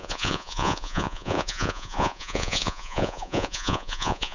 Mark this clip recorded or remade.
remade